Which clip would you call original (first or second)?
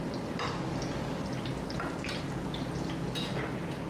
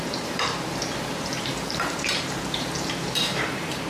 first